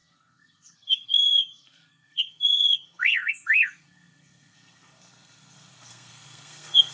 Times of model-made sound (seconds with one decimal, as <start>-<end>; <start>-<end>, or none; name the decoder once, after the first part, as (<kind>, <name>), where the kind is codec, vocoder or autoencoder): 0.0-6.9 (codec, SNAC)